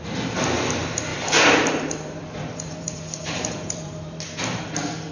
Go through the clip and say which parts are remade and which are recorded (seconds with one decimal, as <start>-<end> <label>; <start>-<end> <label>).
0.0-1.1 recorded; 1.1-4.2 remade; 4.2-5.1 recorded